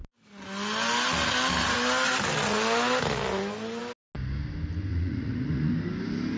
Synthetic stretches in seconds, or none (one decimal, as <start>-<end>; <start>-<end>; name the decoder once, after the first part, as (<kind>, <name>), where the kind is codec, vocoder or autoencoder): 4.9-5.7 (vocoder, Vocos)